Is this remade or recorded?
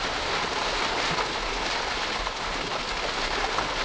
recorded